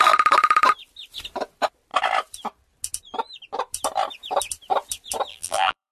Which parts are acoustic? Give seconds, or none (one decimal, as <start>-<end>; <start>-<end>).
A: 0.0-5.3